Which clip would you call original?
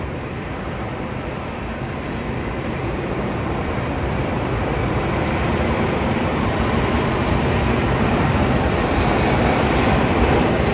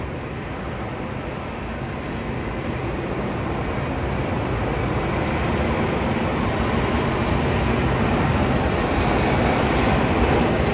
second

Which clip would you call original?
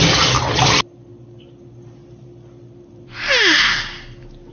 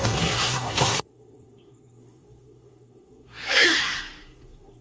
first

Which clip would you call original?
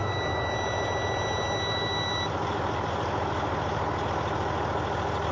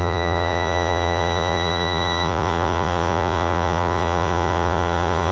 first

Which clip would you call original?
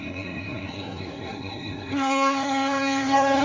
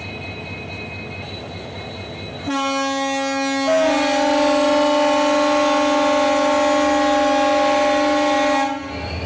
second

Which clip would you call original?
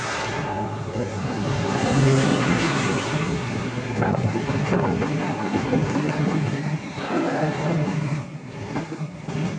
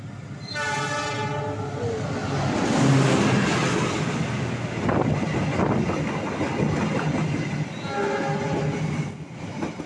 second